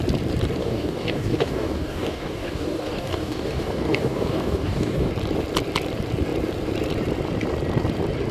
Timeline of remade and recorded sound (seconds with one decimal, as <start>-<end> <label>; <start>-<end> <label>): 0.0-0.6 recorded; 0.6-5.1 remade; 5.1-8.3 recorded